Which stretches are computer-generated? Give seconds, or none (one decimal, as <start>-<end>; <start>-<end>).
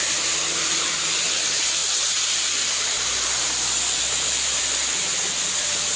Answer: 1.8-4.6